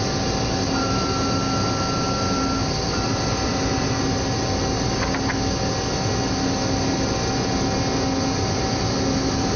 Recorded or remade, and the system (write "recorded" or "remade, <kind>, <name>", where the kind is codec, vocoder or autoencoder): recorded